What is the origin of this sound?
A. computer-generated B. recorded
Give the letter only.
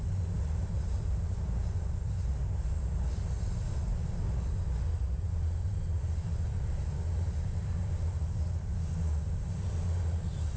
B